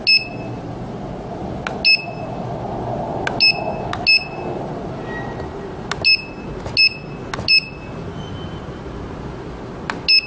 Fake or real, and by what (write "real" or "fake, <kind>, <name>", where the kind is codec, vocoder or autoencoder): real